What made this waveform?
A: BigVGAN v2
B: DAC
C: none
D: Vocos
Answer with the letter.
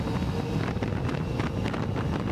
C